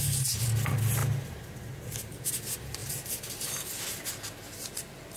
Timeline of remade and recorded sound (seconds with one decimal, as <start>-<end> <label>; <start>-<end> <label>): 0.0-5.2 recorded